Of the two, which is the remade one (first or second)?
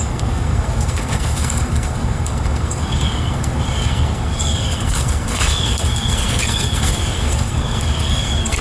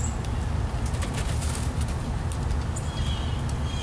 first